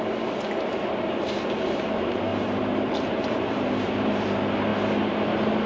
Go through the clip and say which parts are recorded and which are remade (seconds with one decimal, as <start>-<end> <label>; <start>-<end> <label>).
0.0-2.3 recorded; 2.3-4.0 remade; 4.0-5.7 recorded